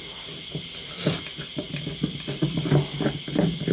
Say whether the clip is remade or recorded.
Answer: recorded